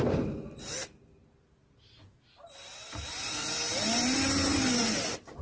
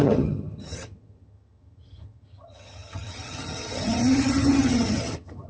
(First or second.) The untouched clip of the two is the first